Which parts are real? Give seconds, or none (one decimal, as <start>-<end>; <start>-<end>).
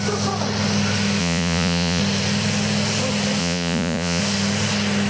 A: 0.0-1.2; 2.0-3.4; 4.2-5.1